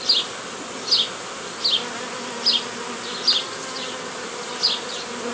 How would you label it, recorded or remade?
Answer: recorded